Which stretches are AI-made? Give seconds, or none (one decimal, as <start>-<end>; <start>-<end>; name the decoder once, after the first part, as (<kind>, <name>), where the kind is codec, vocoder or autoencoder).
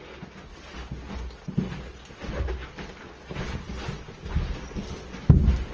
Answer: none